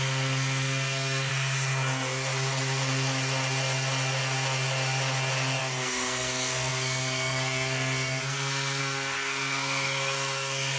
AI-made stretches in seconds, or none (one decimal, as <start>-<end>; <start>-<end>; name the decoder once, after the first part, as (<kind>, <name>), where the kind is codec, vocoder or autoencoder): 0.0-1.3 (codec, SNAC); 5.6-10.8